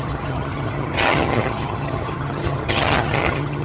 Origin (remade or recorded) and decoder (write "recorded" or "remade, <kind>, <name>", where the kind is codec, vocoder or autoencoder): remade, vocoder, HiFi-GAN